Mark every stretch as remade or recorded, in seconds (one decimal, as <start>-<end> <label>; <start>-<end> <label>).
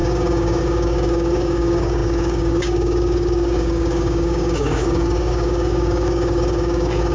0.0-7.1 remade